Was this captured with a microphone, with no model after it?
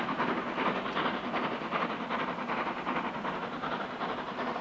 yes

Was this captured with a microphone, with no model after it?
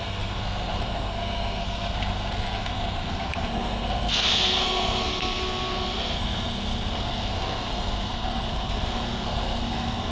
no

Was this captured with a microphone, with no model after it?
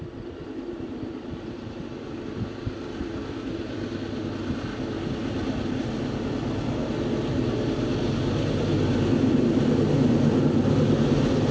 yes